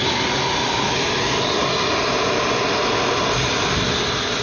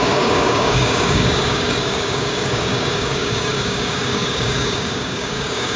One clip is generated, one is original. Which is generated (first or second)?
second